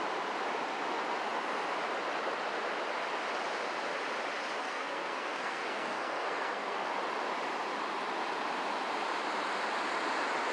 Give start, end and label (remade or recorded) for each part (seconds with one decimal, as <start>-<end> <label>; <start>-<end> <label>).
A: 0.0-4.6 recorded; 4.6-6.9 remade; 6.9-10.5 recorded